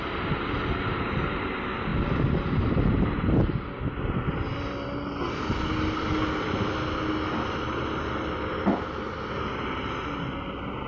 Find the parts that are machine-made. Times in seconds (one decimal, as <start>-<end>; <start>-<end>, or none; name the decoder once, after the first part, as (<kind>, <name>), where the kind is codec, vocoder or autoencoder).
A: none